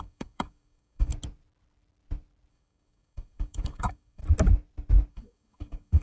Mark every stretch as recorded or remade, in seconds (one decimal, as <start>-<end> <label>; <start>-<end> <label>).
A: 0.0-1.1 remade; 1.1-2.5 recorded; 2.5-4.2 remade; 4.2-5.1 recorded; 5.1-6.0 remade

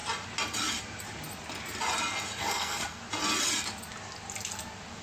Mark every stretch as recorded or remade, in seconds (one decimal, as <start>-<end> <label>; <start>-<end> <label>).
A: 0.0-2.4 recorded; 2.4-3.0 remade; 3.0-5.0 recorded

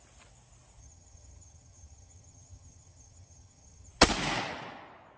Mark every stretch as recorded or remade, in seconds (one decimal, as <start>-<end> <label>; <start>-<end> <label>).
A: 0.0-0.8 recorded; 0.8-3.9 remade; 3.9-5.2 recorded

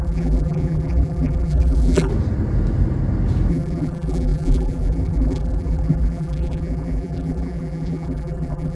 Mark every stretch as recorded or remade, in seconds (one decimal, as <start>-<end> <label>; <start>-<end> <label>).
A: 0.0-2.1 remade; 2.1-3.5 recorded; 3.5-8.8 remade

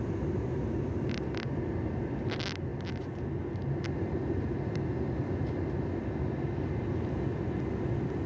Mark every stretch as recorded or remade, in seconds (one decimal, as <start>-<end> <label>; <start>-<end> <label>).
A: 0.0-8.3 recorded